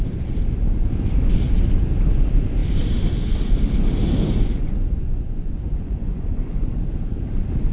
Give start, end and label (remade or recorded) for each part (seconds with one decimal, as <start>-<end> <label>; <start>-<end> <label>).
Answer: 0.0-4.6 recorded; 4.6-6.7 remade; 6.7-7.7 recorded